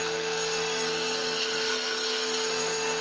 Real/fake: fake